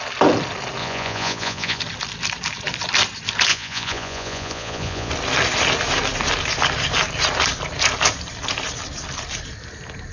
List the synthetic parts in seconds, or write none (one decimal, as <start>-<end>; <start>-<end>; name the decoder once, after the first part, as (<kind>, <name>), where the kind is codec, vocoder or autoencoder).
0.8-1.8 (vocoder, Vocos); 3.5-5.1